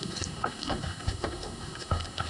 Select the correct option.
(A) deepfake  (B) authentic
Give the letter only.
A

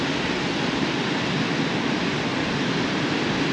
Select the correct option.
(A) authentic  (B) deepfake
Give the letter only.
A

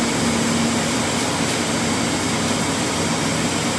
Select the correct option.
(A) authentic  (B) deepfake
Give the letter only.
A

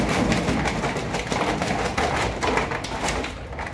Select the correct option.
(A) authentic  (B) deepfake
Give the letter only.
A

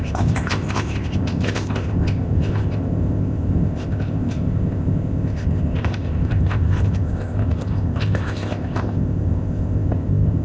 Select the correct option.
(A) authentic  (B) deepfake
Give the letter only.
B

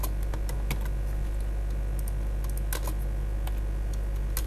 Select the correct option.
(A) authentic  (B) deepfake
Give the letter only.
A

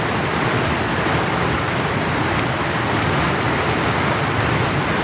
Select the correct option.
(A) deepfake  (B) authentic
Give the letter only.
B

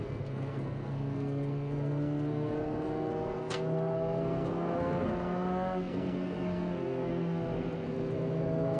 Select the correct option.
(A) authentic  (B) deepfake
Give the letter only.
B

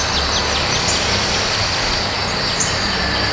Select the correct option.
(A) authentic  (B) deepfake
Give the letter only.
A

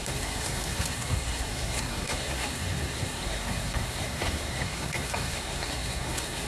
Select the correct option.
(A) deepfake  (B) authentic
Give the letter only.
A